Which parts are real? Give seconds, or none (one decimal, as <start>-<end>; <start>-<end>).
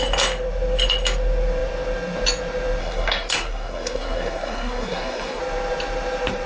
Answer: 0.0-2.8; 5.4-6.5